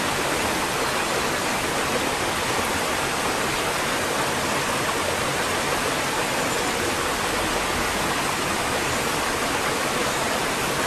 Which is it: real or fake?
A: real